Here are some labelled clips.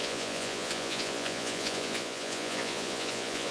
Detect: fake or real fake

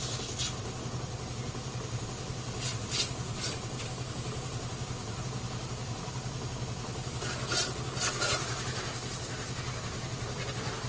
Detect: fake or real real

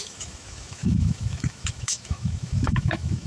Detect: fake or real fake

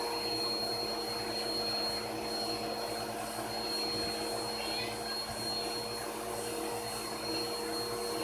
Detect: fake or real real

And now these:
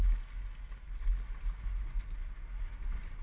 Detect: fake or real real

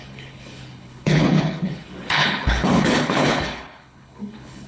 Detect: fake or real fake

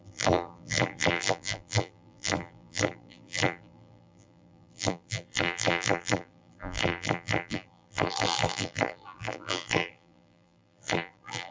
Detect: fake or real fake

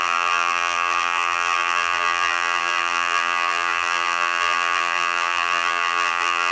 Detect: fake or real fake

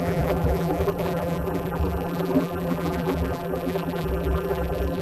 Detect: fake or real fake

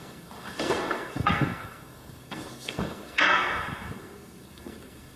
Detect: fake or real fake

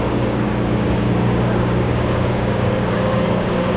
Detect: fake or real fake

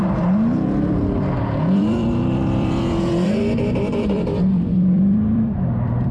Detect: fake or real fake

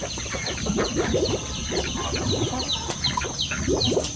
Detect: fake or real real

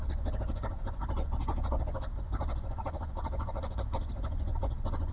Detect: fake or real fake